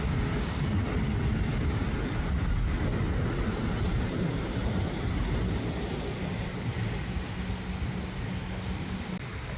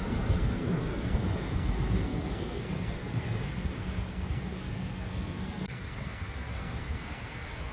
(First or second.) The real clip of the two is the first